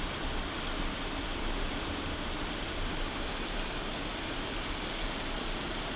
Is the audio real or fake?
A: real